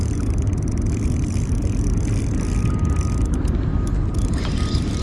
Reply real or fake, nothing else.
real